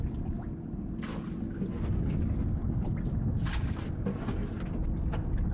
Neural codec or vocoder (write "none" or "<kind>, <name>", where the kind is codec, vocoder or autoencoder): none